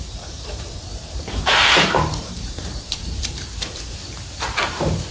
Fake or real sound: fake